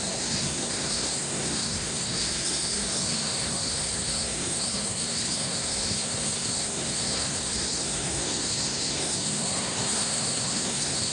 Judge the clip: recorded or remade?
remade